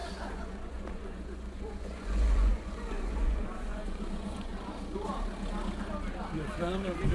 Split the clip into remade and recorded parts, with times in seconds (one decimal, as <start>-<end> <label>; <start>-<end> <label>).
0.0-4.5 remade; 4.5-6.6 recorded; 6.6-7.1 remade